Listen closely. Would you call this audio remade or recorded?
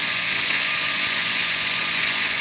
remade